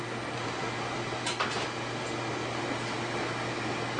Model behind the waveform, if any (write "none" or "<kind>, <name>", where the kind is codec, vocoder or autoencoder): none